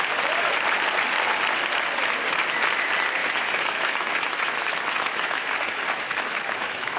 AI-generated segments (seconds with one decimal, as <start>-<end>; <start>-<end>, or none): 3.2-7.0